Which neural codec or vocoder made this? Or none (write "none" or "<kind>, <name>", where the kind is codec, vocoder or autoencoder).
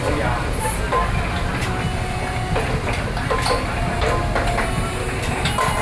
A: none